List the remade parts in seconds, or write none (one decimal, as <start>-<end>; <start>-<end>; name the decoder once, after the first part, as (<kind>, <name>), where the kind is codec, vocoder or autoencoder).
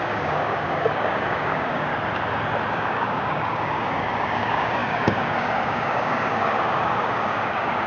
0.0-1.9 (codec, DAC); 2.7-7.9